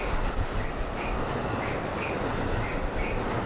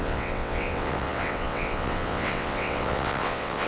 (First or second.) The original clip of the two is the first